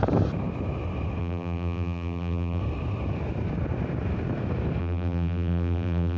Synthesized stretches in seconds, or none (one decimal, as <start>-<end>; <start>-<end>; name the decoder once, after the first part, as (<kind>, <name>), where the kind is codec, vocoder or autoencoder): 1.2-2.6 (vocoder, BigVGAN v2); 4.8-6.2